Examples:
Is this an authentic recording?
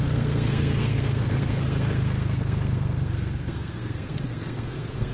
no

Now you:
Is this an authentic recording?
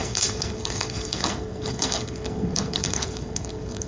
no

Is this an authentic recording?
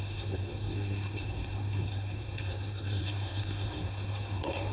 no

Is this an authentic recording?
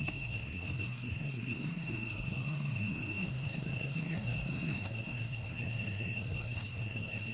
no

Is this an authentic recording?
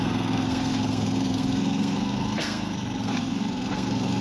no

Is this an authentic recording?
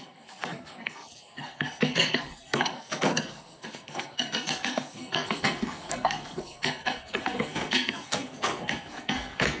no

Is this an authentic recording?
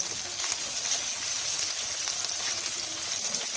yes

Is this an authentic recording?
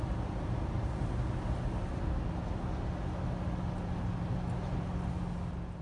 yes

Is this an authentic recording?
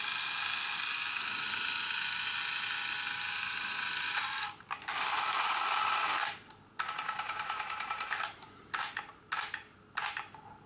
yes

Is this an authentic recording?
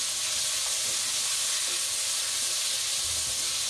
yes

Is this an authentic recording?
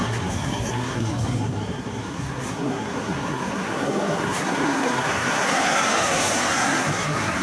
no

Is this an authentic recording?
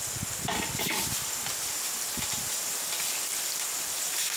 yes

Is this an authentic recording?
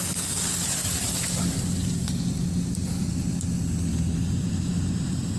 yes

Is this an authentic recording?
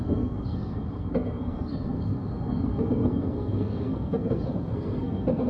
no